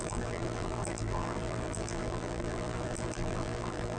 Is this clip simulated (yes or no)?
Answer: yes